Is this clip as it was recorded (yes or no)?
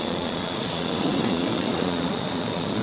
no